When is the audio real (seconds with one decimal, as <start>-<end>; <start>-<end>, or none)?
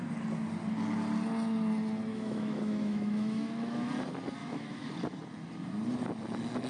0.0-2.1; 3.9-4.4; 4.9-6.7